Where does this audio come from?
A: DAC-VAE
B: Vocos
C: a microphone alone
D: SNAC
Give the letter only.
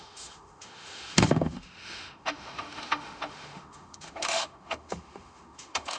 A